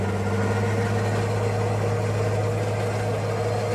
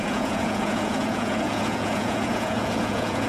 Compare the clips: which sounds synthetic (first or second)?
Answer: second